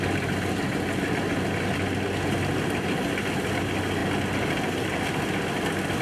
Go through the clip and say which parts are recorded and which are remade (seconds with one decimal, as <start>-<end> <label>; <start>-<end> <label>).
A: 0.0-6.0 recorded

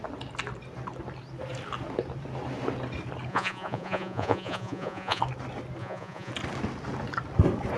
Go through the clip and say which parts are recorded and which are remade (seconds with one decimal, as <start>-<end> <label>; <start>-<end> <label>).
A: 0.0-3.3 recorded; 3.3-5.2 remade; 5.2-5.8 recorded; 5.8-6.3 remade; 6.3-7.8 recorded

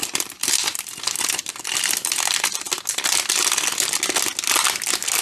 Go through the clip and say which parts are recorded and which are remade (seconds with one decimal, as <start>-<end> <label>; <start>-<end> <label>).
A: 0.0-1.8 remade; 1.8-5.2 recorded